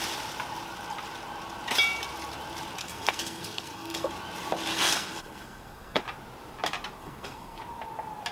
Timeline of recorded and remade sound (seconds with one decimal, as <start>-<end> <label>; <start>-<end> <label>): 0.0-2.8 recorded; 2.8-4.1 remade; 4.1-4.7 recorded; 4.7-6.0 remade; 6.0-7.0 recorded; 7.0-7.6 remade; 7.6-8.3 recorded